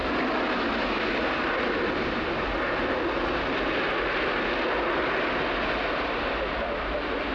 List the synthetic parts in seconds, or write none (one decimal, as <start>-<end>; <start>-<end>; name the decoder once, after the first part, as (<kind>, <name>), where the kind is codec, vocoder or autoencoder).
none